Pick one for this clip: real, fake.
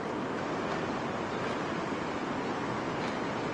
real